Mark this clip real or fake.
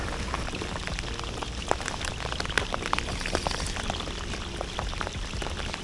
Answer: real